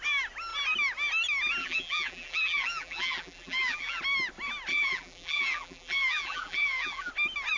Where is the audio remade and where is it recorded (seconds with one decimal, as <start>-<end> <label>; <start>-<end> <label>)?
0.0-1.6 recorded; 1.6-4.0 remade; 4.0-4.7 recorded; 4.7-7.1 remade; 7.1-7.6 recorded